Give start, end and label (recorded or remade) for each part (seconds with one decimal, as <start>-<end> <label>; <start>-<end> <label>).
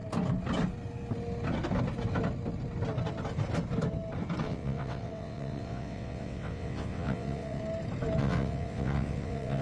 0.0-4.4 recorded; 4.4-7.6 remade; 7.6-8.2 recorded; 8.2-9.6 remade